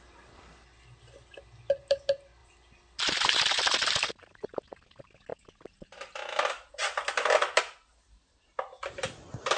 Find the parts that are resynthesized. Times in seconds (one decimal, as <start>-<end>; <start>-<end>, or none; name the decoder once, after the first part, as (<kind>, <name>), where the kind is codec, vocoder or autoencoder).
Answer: 2.4-3.9 (vocoder, BigVGAN v2)